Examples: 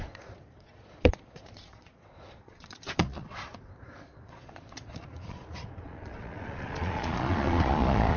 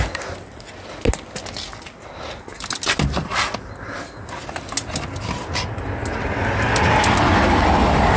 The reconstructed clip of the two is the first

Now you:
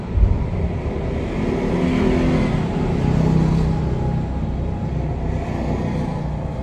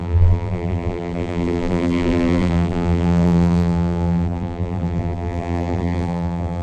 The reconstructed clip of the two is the second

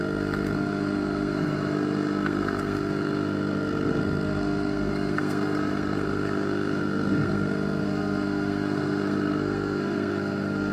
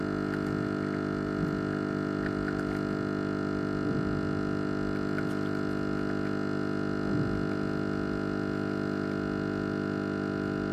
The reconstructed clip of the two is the first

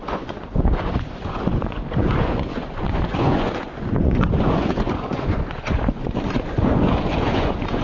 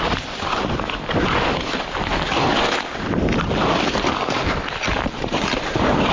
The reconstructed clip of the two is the first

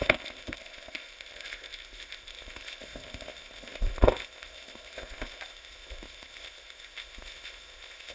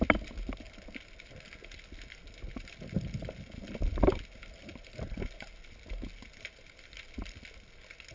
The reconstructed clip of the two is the first